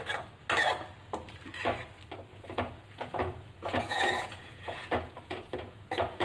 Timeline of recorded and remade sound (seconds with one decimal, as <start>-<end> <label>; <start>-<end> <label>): 0.0-2.3 recorded; 2.3-6.2 remade